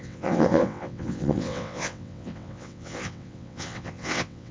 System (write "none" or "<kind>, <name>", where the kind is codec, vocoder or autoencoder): vocoder, WaveNeXt